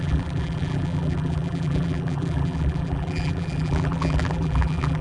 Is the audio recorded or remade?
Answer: remade